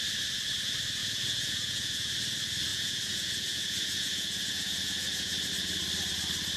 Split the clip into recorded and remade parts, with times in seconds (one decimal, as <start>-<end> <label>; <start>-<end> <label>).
0.0-1.0 recorded; 1.0-2.1 remade; 2.1-2.7 recorded; 2.7-5.5 remade; 5.5-6.6 recorded